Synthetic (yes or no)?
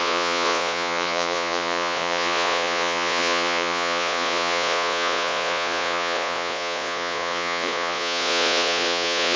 yes